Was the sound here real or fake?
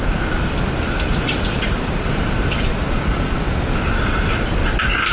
real